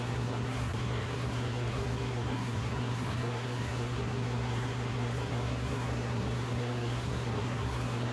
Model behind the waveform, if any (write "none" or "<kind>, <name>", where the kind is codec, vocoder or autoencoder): codec, SNAC